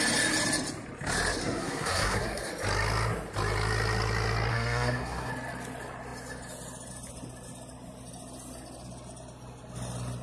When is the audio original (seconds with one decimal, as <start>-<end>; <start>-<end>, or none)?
0.0-1.4; 2.5-4.5; 5.3-10.2